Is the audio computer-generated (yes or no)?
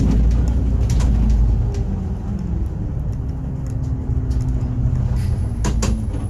no